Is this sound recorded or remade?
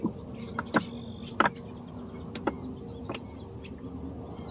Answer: recorded